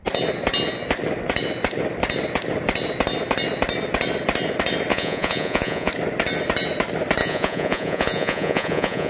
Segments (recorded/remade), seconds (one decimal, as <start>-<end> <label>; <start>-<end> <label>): 0.0-4.9 recorded; 4.9-5.9 remade; 5.9-7.2 recorded; 7.2-9.1 remade